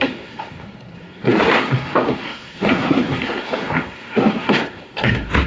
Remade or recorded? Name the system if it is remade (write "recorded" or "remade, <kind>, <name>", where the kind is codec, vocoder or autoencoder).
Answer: remade, codec, SNAC